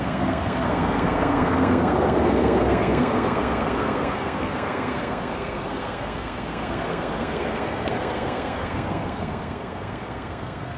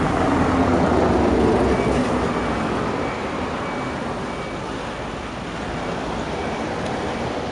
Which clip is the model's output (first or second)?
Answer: first